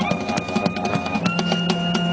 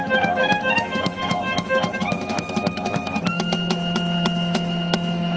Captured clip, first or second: first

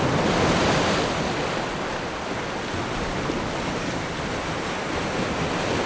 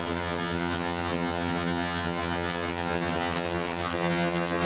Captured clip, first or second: first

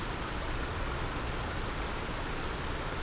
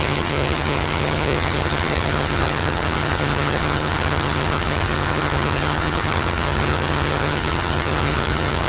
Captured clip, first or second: first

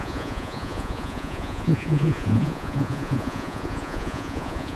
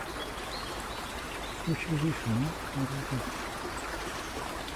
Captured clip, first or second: second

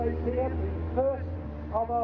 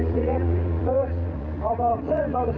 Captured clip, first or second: first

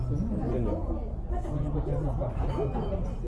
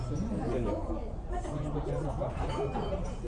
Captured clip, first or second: first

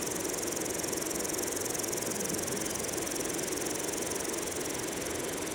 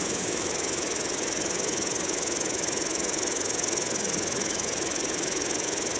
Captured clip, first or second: first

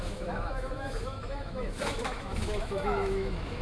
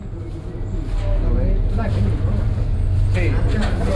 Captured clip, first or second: second